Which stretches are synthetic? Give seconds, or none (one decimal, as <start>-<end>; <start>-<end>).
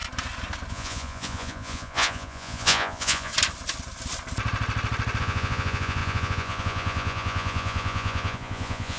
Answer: 0.7-3.3; 5.2-9.0